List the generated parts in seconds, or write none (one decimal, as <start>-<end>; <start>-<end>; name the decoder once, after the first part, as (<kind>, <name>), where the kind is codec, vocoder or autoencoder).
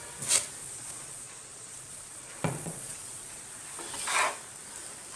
0.6-3.5 (vocoder, Vocos)